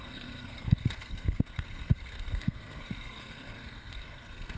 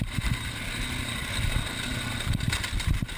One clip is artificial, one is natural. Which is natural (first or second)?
second